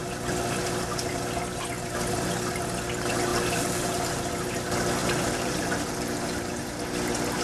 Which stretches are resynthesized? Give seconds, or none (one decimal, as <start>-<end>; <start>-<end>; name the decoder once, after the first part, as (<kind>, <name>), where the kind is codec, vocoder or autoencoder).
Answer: 3.3-4.5 (vocoder, BigVGAN v2); 5.0-6.7